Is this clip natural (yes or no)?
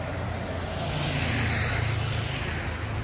yes